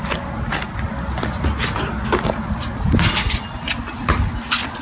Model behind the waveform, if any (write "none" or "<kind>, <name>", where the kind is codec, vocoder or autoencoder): none